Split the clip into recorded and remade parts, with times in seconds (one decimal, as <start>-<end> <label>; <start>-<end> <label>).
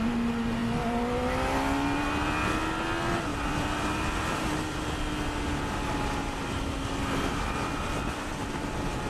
0.0-9.1 recorded